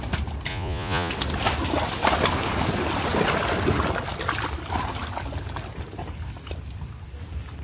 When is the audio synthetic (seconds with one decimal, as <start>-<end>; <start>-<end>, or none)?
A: 0.5-1.1